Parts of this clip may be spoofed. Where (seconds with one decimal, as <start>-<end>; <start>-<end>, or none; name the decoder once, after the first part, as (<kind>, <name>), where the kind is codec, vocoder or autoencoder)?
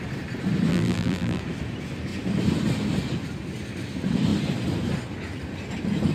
0.7-1.4 (vocoder, BigVGAN v2)